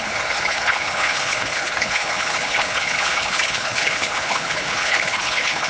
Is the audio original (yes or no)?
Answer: no